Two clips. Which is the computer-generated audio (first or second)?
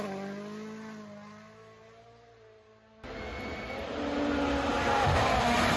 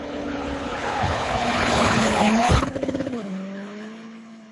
second